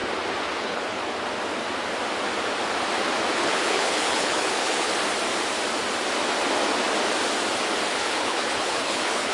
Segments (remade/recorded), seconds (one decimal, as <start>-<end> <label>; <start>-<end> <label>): 0.0-0.6 recorded; 0.6-1.0 remade; 1.0-3.3 recorded; 3.3-4.9 remade; 4.9-7.9 recorded; 7.9-9.3 remade